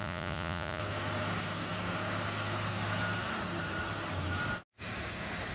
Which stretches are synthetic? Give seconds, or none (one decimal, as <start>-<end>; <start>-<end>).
0.0-0.8